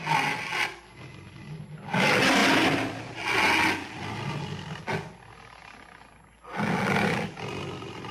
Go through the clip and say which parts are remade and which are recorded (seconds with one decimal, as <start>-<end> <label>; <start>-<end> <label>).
0.0-8.1 recorded